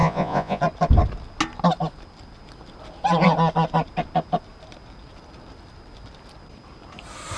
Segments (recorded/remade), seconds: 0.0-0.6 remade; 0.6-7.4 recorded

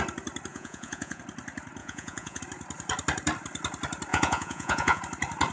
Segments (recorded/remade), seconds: 0.0-0.5 recorded; 0.5-1.2 remade; 1.2-1.8 recorded; 1.8-2.4 remade; 2.4-4.1 recorded; 4.1-5.0 remade; 5.0-5.5 recorded

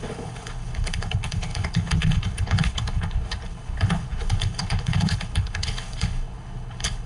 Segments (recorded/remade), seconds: 0.0-7.1 remade

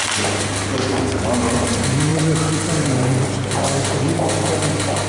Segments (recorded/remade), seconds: 0.0-5.1 recorded

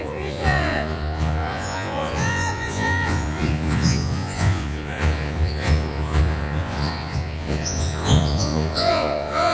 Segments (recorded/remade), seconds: 0.0-9.5 remade

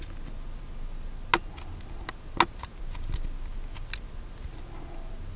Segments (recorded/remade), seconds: 0.0-5.4 recorded

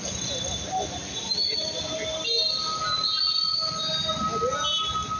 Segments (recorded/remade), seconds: 0.0-5.2 recorded

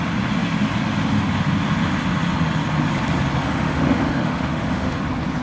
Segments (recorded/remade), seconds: 0.0-3.4 recorded; 3.4-5.0 remade; 5.0-5.4 recorded